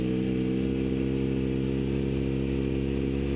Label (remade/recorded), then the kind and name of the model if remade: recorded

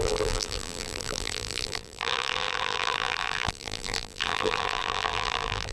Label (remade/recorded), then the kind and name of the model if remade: remade, vocoder, BigVGAN v2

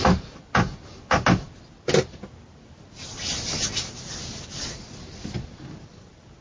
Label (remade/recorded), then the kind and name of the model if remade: recorded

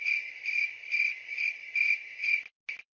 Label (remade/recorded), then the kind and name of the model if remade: recorded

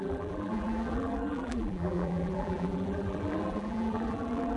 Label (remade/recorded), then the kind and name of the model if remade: remade, vocoder, BigVGAN v2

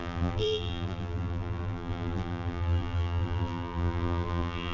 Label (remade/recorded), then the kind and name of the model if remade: remade, vocoder, BigVGAN v2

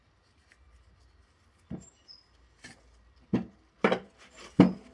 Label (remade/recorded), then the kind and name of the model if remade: recorded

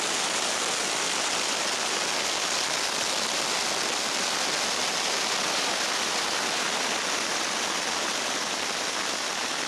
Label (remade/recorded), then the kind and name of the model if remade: recorded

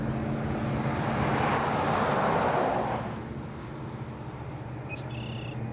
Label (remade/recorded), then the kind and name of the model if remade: recorded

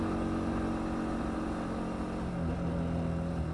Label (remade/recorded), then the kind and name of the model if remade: recorded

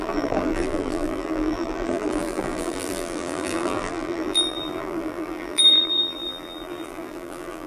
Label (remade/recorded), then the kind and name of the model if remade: remade, vocoder, BigVGAN v2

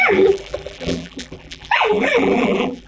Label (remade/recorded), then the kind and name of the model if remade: remade, vocoder, BigVGAN v2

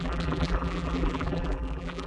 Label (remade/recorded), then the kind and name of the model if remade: remade, vocoder, BigVGAN v2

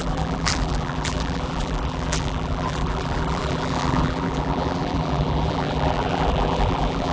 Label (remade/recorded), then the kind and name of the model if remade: remade, vocoder, BigVGAN v2